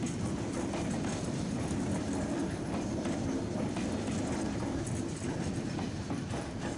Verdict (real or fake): real